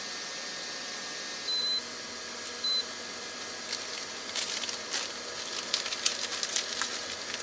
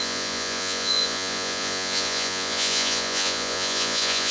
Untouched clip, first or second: first